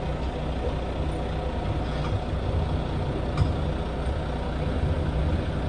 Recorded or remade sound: recorded